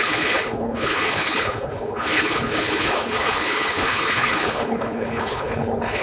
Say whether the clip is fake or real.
fake